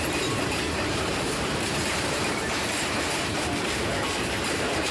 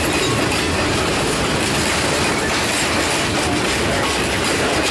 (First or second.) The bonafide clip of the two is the second